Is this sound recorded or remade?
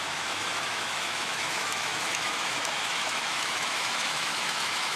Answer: remade